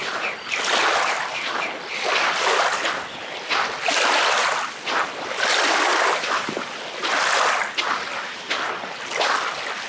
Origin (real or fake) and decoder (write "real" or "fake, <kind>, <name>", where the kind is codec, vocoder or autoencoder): real